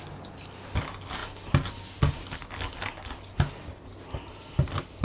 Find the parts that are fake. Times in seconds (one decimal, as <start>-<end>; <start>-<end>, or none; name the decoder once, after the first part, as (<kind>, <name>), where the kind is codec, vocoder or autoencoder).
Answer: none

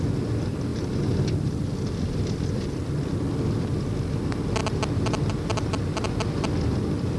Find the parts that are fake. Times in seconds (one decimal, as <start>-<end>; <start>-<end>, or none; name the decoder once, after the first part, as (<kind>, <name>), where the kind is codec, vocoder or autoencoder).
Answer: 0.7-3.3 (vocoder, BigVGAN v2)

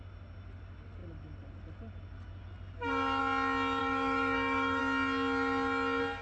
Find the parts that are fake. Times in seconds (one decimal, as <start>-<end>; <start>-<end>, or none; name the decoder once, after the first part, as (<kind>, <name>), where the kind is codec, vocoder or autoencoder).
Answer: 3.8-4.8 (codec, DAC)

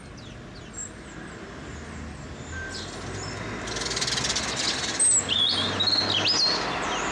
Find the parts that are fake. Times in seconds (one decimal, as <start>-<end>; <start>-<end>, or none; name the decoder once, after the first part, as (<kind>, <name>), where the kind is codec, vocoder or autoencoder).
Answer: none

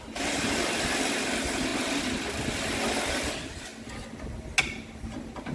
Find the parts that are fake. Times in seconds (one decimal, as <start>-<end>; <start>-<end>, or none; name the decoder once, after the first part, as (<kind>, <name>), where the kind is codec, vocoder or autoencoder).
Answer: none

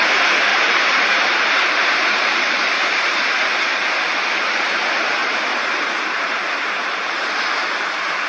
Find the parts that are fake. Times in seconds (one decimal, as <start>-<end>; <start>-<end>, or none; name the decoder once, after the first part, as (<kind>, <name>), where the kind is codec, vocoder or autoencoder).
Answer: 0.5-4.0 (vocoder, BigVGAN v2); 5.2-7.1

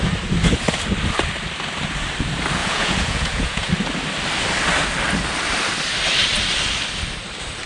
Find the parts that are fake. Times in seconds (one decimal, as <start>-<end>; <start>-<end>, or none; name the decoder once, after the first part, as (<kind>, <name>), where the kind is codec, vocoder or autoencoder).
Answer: 2.6-3.7 (vocoder, Vocos)

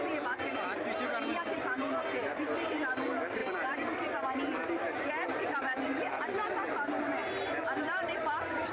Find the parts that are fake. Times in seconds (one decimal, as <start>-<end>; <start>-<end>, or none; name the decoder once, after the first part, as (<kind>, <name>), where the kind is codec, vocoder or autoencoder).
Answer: 0.0-8.7 (vocoder, BigVGAN v2)